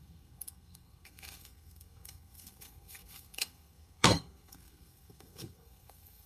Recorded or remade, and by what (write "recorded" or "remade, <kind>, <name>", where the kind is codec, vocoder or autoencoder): remade, codec, SNAC